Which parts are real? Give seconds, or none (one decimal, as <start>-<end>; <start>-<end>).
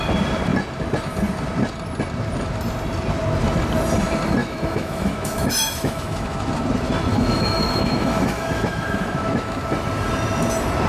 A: 0.0-4.4; 6.5-7.1; 9.6-10.9